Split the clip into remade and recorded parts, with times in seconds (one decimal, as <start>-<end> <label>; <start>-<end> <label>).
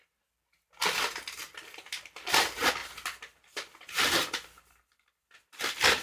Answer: 0.0-6.0 recorded